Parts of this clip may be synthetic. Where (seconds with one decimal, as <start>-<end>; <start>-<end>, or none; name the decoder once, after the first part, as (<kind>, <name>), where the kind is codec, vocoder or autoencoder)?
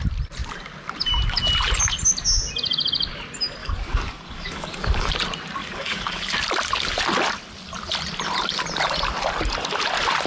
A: 3.6-5.1 (codec, DAC); 5.6-6.3